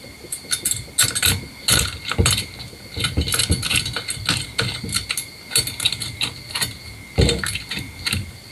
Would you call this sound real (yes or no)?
yes